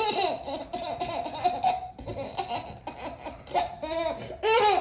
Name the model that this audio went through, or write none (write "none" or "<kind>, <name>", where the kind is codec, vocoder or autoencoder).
none